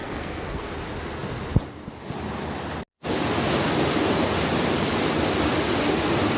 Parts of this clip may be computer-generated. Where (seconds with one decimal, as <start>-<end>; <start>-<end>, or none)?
0.0-0.7